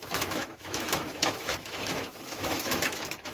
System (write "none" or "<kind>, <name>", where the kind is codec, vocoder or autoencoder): autoencoder, DAC-VAE